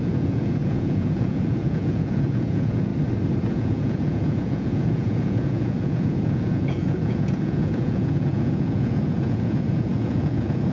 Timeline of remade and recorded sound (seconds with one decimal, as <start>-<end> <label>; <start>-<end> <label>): 0.0-2.9 remade; 2.9-3.5 recorded; 3.5-10.7 remade